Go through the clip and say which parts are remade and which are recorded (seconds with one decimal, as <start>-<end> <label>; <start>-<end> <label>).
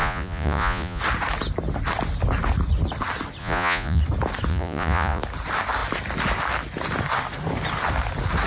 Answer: 0.0-1.0 remade; 1.0-3.4 recorded; 3.4-4.0 remade; 4.0-4.5 recorded; 4.5-5.2 remade; 5.2-8.5 recorded